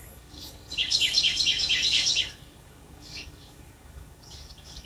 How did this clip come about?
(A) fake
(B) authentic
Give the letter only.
A